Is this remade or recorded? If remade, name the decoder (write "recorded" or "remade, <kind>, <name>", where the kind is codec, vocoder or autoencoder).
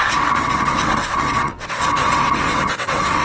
remade, vocoder, WaveNeXt